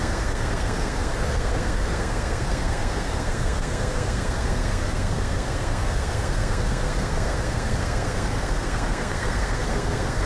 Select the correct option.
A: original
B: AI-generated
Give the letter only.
B